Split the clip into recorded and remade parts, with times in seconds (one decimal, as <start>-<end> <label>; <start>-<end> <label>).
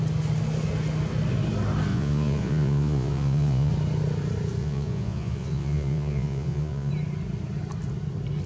0.0-1.9 recorded; 1.9-3.7 remade; 3.7-4.6 recorded; 4.6-6.9 remade; 6.9-8.5 recorded